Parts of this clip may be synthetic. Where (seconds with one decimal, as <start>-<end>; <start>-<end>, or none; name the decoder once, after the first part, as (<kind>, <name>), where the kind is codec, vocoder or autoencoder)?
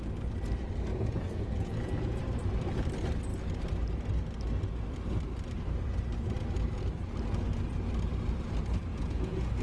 0.9-2.2 (vocoder, Vocos); 8.9-9.6